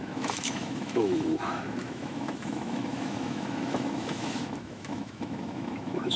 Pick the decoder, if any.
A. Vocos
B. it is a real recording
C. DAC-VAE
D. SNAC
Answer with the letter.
C